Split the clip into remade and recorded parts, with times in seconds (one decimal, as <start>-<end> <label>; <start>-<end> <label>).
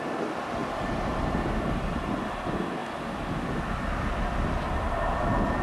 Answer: 0.0-2.8 remade; 2.8-4.2 recorded; 4.2-5.6 remade